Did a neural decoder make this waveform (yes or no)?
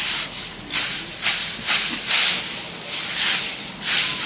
no